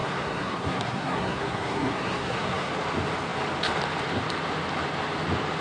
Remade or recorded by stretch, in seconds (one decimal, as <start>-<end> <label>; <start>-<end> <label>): 0.0-2.7 remade; 2.7-5.6 recorded